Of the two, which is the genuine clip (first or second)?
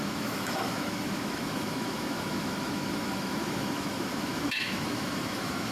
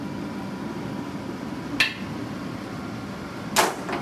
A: second